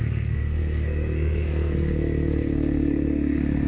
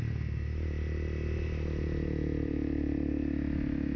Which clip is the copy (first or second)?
first